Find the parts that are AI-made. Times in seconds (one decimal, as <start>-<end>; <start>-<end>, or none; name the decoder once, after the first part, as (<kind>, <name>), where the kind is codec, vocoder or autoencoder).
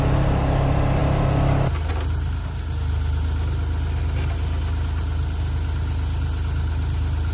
none